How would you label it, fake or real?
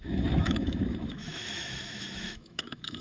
fake